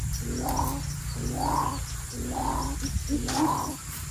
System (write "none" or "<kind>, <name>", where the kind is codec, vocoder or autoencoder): none